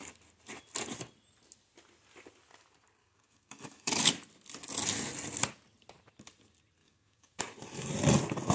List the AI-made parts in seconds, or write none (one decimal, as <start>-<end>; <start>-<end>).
3.0-4.1; 6.8-7.4